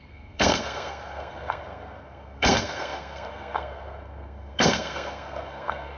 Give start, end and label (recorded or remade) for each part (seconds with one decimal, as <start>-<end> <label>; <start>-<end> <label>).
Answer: 0.0-6.0 remade